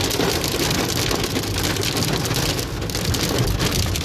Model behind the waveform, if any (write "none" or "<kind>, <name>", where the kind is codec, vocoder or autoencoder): none